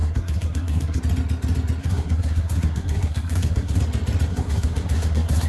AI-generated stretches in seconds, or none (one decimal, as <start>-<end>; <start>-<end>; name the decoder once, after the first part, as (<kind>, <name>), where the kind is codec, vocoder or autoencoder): 0.0-1.0 (codec, SNAC); 1.8-3.8; 4.3-5.5